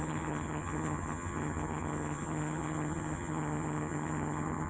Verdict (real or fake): fake